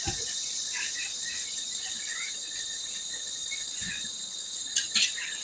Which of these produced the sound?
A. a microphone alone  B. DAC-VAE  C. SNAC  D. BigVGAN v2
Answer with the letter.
A